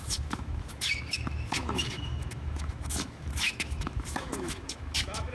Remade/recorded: remade